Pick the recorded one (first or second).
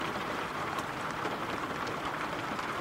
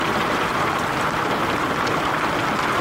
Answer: second